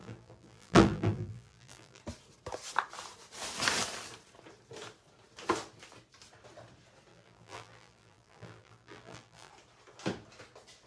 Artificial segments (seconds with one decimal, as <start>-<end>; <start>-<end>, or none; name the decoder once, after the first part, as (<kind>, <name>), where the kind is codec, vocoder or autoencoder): 0.0-2.0 (vocoder, BigVGAN v2); 7.1-9.5